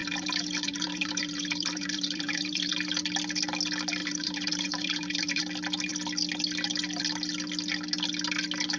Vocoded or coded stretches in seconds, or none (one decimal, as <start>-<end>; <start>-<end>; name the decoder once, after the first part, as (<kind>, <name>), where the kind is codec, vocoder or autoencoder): 0.0-2.7 (vocoder, BigVGAN v2); 4.0-5.4